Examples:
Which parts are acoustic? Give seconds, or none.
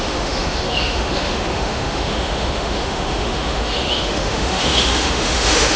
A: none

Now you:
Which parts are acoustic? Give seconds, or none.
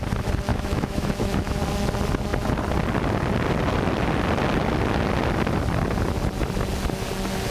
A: 0.0-0.5; 1.6-7.5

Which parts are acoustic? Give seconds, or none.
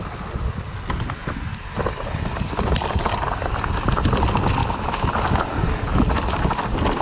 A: 0.0-4.6; 5.1-7.0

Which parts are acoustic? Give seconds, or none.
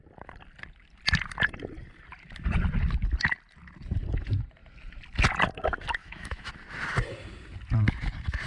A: 0.0-6.0; 6.5-8.5